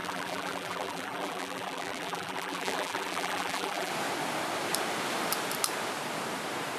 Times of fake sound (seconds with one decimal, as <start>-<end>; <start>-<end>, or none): 0.0-3.9